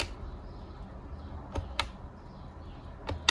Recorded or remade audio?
recorded